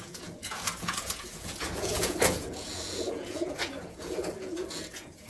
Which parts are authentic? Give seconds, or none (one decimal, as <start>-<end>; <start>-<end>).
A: none